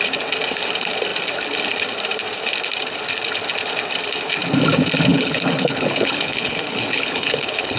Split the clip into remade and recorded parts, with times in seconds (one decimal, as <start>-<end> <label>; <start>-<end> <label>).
0.0-5.1 recorded; 5.1-7.8 remade